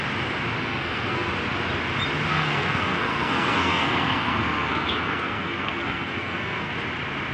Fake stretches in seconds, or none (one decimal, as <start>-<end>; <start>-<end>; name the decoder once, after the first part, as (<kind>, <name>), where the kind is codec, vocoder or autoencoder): 0.6-1.3 (codec, SNAC); 2.3-6.7